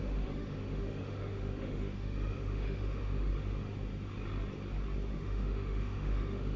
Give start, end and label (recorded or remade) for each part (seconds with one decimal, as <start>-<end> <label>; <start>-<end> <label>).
0.0-3.3 remade; 3.3-5.1 recorded; 5.1-6.6 remade